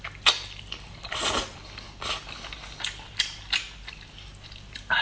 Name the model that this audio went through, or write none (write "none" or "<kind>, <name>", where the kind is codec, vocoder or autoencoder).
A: none